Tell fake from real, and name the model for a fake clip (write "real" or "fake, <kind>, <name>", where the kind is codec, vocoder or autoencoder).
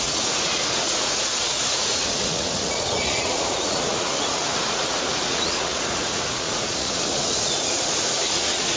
fake, vocoder, Vocos